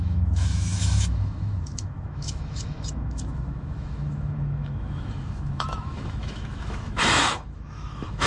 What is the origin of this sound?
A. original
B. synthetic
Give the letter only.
B